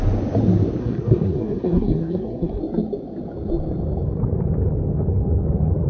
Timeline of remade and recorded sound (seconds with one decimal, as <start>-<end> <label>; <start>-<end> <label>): 0.0-0.8 recorded; 0.8-2.6 remade; 2.6-5.9 recorded